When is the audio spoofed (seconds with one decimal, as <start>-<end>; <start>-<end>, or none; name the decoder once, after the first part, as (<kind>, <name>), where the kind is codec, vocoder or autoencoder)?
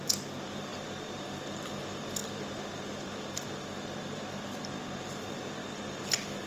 0.0-6.5 (vocoder, BigVGAN v2)